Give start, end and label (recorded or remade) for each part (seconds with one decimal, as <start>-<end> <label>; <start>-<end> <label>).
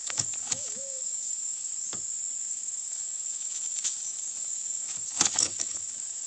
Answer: 0.0-1.7 remade; 1.7-2.5 recorded; 2.5-6.3 remade